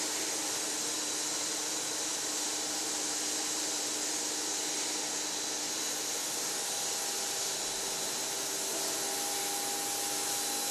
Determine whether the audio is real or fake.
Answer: real